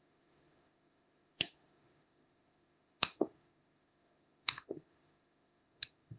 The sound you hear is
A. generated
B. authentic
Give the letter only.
A